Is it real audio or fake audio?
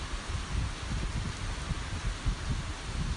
real